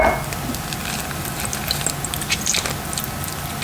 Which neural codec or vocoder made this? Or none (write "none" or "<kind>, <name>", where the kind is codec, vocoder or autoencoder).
none